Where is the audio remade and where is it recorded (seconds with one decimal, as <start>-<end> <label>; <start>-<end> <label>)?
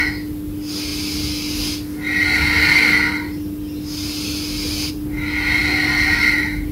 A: 0.0-6.7 recorded